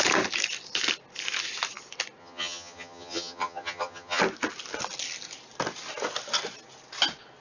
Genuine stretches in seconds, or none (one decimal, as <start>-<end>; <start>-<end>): 0.0-2.2; 4.2-7.4